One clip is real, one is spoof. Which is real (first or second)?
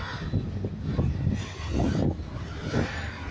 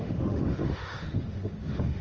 first